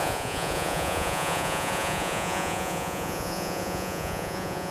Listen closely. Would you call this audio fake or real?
fake